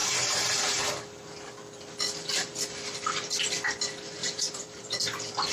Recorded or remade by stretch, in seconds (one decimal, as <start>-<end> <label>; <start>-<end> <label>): 0.0-0.8 remade; 0.8-4.2 recorded; 4.2-5.0 remade; 5.0-5.5 recorded